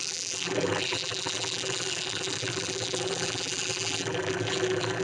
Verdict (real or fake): fake